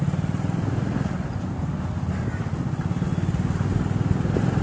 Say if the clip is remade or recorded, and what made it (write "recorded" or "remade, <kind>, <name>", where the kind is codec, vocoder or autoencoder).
recorded